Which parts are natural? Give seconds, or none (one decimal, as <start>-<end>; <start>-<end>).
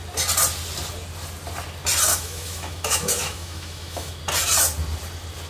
0.0-2.1; 4.2-5.5